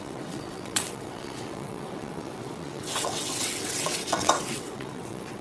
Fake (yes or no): yes